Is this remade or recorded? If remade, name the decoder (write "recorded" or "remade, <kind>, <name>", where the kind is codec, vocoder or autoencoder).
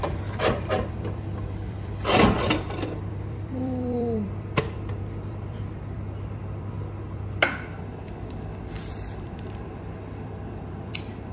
remade, vocoder, BigVGAN v2